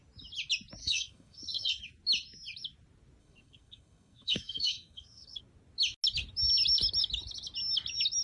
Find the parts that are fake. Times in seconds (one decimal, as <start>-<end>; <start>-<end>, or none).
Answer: 0.8-1.8; 3.2-5.4